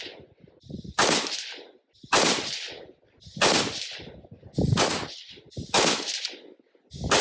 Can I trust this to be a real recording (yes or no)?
yes